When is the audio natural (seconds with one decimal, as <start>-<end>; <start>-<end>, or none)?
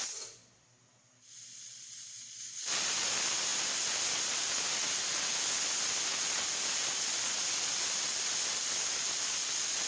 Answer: 0.0-9.9